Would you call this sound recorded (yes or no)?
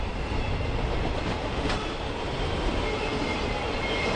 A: yes